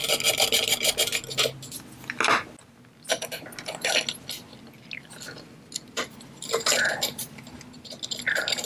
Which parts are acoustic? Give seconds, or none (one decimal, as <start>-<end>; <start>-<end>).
0.0-8.7